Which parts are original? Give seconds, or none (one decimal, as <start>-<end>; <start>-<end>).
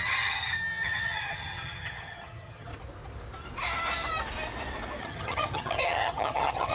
2.7-5.0